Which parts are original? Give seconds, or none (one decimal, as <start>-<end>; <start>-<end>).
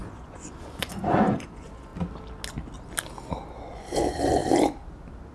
1.9-3.6; 4.4-5.3